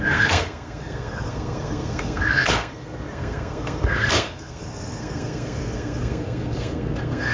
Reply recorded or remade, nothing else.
remade